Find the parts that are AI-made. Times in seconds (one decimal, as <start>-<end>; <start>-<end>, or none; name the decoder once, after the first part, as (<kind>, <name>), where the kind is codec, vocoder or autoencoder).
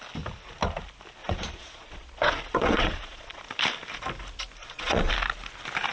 1.2-3.4 (vocoder, Vocos); 4.6-5.1